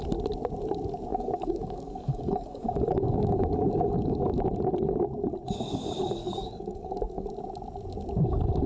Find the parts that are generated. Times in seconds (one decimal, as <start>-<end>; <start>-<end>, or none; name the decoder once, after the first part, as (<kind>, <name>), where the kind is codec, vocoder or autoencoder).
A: 1.1-4.4 (codec, DAC); 6.2-7.3